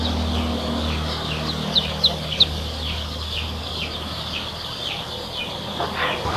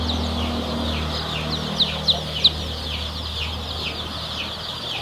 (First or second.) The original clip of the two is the second